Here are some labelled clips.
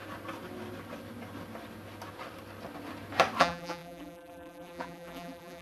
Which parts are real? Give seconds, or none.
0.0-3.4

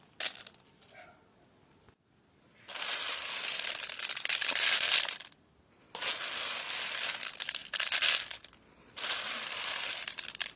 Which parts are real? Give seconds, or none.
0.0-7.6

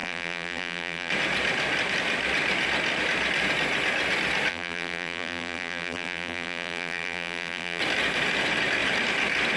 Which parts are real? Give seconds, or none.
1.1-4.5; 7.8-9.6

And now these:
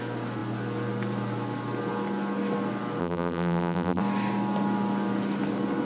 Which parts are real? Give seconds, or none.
0.0-3.0; 4.0-5.8

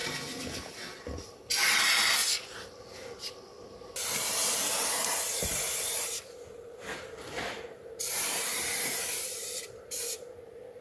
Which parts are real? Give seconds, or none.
0.0-0.7; 2.2-4.6